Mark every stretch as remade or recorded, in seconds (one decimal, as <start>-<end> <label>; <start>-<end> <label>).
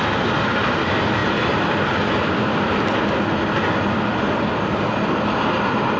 0.0-6.0 recorded